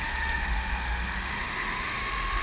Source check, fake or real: fake